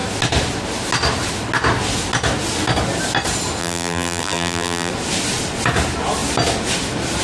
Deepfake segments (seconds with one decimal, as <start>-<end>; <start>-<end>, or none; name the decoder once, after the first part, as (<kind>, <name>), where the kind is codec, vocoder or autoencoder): 3.6-4.9 (vocoder, BigVGAN v2)